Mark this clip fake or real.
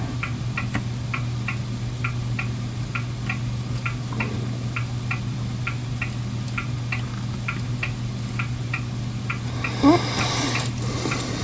real